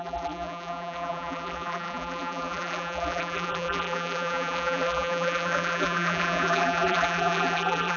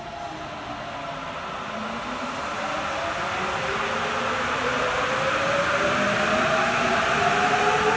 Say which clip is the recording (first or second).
second